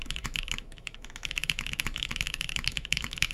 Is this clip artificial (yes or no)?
yes